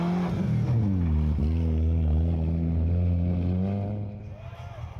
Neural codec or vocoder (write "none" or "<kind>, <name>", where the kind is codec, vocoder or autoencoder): none